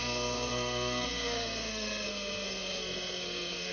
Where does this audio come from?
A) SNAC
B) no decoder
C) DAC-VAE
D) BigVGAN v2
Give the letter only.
A